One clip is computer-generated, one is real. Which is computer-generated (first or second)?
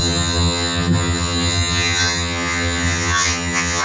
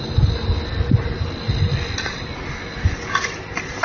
first